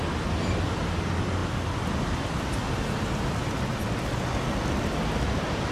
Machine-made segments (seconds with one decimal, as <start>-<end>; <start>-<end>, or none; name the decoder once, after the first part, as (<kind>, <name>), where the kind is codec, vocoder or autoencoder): none